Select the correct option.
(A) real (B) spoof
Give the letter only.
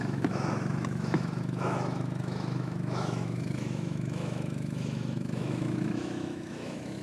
B